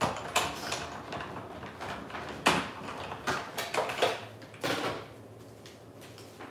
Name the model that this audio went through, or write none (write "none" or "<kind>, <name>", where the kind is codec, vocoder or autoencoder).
none